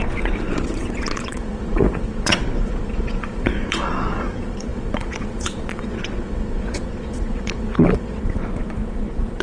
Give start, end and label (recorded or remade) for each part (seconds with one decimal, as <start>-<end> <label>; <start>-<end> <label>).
0.0-9.4 remade